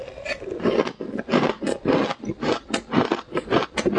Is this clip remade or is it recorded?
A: recorded